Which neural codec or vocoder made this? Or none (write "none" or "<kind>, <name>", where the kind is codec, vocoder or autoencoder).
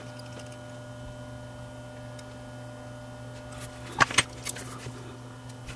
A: none